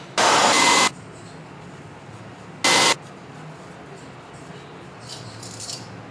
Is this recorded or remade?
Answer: recorded